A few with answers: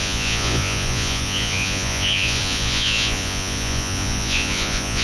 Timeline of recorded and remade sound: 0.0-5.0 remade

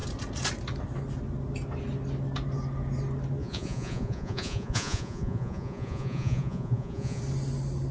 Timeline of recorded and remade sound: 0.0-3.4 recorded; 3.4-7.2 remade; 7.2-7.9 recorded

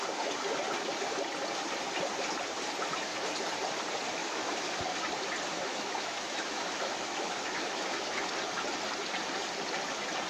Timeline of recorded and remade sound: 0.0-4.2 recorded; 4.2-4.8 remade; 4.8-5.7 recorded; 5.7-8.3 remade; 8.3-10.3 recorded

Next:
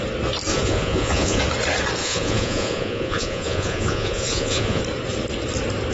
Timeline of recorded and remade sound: 0.0-0.5 recorded; 0.5-1.4 remade; 1.4-2.0 recorded; 2.0-4.8 remade; 4.8-5.9 recorded